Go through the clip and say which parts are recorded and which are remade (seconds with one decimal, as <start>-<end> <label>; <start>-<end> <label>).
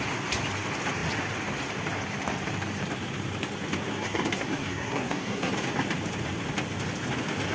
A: 0.0-3.9 recorded; 3.9-5.5 remade; 5.5-7.5 recorded